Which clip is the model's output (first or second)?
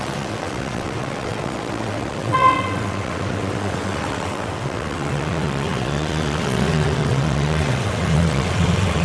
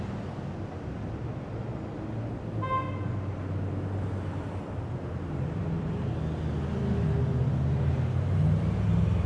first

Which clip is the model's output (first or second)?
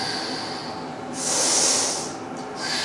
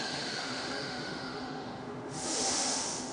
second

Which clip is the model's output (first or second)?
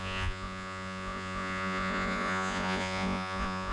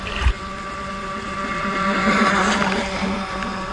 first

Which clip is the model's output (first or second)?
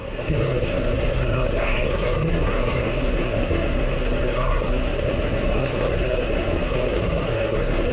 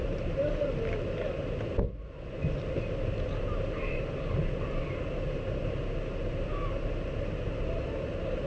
first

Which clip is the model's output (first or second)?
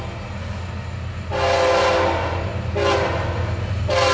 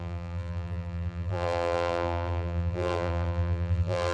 second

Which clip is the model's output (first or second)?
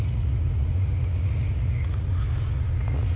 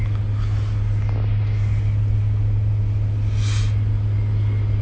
first